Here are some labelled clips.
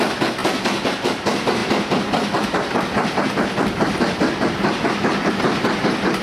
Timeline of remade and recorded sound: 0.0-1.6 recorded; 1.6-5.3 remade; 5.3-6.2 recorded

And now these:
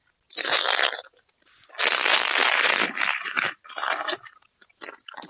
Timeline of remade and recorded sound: 0.0-1.9 recorded; 1.9-5.3 remade

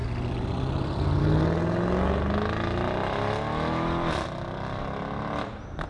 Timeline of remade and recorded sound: 0.0-1.2 remade; 1.2-5.9 recorded

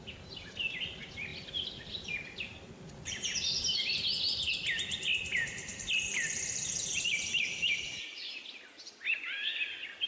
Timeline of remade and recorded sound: 0.0-1.3 recorded; 1.3-4.5 remade; 4.5-5.7 recorded; 5.7-8.2 remade; 8.2-10.1 recorded